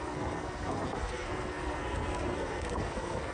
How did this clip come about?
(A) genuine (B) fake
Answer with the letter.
B